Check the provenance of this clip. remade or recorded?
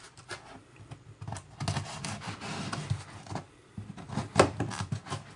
recorded